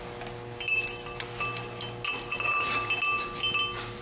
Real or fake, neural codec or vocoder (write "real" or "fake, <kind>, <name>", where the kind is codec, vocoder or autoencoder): real